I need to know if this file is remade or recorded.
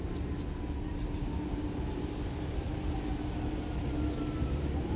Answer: recorded